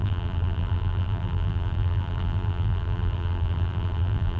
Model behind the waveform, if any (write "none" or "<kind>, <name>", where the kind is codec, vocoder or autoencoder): vocoder, BigVGAN v2